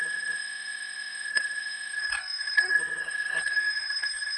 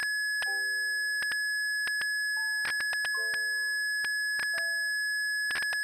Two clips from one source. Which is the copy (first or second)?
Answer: first